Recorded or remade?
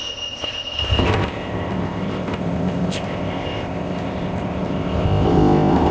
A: remade